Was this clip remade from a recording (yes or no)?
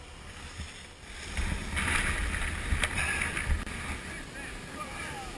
no